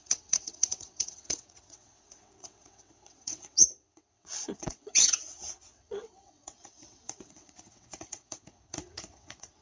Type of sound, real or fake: fake